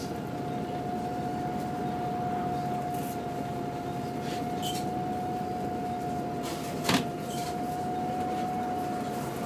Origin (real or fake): real